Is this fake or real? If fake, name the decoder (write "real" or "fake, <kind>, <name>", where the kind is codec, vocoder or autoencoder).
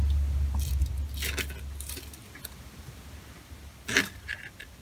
real